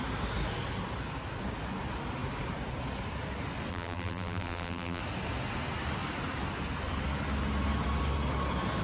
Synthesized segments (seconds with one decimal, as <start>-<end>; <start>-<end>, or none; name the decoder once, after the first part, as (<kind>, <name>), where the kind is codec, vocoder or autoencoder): 3.7-5.0 (vocoder, BigVGAN v2)